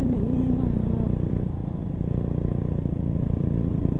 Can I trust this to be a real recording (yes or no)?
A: no